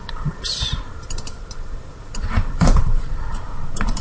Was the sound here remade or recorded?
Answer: remade